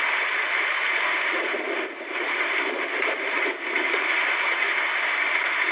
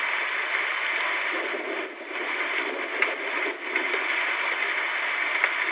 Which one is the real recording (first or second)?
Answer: second